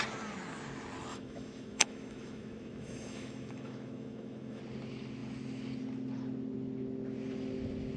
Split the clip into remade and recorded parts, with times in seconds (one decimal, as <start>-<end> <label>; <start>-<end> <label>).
0.0-1.1 recorded; 1.1-4.6 remade; 4.6-8.0 recorded